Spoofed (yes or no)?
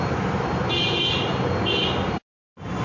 no